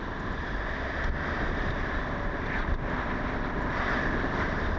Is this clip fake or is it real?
real